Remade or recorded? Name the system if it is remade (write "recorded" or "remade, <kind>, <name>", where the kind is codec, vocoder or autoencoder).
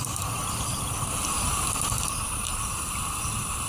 remade, vocoder, BigVGAN v2